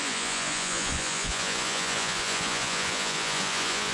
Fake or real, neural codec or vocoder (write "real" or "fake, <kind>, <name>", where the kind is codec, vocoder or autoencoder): fake, vocoder, Vocos